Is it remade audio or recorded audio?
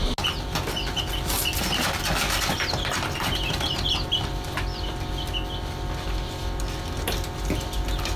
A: recorded